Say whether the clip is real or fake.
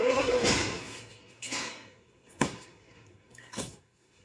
fake